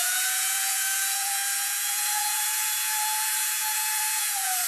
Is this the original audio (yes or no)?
no